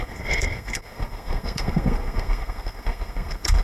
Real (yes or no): no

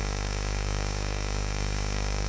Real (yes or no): no